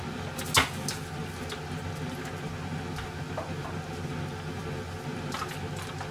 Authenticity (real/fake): real